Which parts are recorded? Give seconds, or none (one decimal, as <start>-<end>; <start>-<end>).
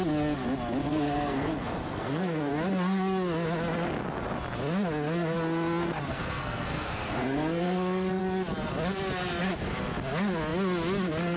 0.0-0.9; 2.5-6.1; 8.2-11.4